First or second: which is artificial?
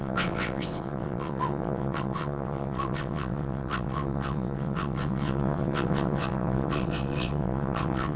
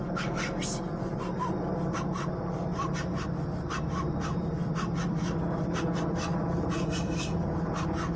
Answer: first